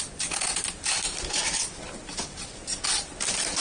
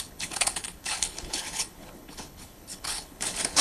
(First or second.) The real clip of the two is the first